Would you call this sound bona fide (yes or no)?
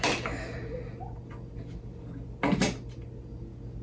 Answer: yes